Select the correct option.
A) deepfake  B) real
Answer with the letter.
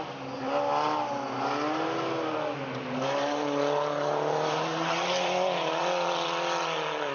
B